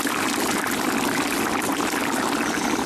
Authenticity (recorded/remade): recorded